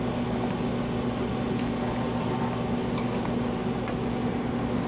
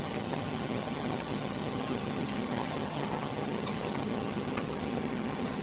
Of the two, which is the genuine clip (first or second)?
first